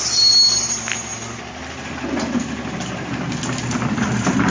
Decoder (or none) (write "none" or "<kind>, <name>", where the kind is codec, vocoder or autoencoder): none